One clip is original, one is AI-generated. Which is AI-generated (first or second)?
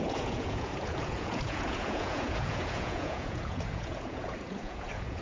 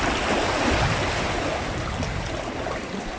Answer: first